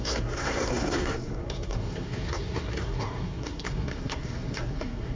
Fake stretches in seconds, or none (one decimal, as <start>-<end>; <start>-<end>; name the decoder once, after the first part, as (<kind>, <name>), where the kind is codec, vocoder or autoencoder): 0.0-5.2 (codec, SNAC)